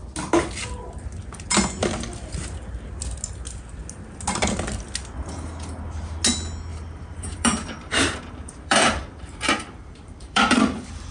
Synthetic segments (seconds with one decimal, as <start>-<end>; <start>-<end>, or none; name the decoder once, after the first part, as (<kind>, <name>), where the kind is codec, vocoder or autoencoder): 6.7-10.6 (vocoder, BigVGAN v2)